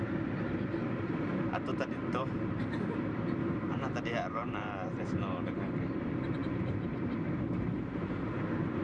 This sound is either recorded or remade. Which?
remade